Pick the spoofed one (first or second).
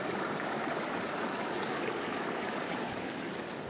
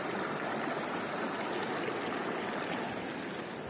first